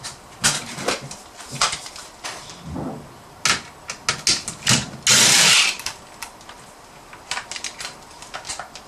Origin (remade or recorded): recorded